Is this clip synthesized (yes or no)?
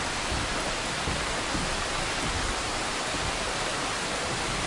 no